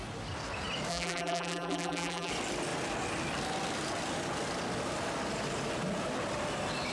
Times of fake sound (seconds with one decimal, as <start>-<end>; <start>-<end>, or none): 0.9-2.3